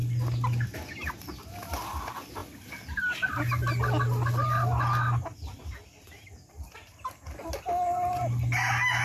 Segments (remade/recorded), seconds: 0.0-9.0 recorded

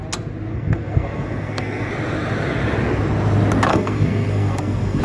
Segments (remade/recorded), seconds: 0.0-0.5 recorded; 0.5-1.9 remade; 1.9-3.7 recorded; 3.7-5.0 remade